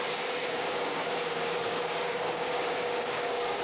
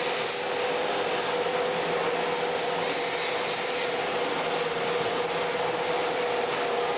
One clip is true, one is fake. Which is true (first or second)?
second